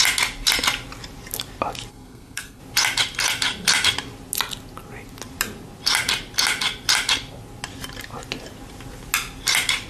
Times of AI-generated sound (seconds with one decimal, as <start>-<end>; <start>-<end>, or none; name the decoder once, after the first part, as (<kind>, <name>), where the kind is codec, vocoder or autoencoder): 1.9-2.6 (codec, SNAC)